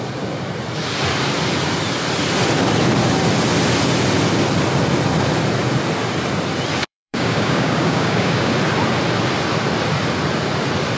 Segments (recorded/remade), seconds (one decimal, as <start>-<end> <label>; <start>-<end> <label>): 0.0-6.8 recorded; 6.8-8.5 remade; 8.5-11.0 recorded